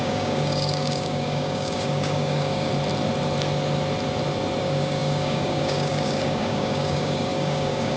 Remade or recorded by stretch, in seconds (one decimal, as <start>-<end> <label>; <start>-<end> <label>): 0.0-2.7 remade; 2.7-4.6 recorded; 4.6-8.0 remade